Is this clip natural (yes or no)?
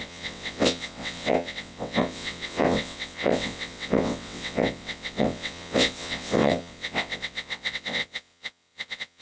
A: no